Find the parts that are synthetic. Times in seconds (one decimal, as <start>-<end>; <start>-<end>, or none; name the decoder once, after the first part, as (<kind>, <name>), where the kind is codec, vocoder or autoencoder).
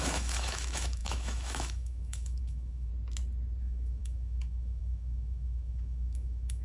0.0-2.9 (autoencoder, DAC-VAE); 3.6-6.6